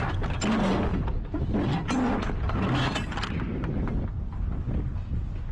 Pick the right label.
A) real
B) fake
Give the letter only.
A